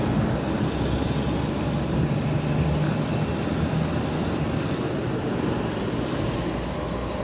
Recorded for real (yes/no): yes